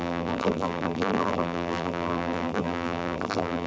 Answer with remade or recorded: remade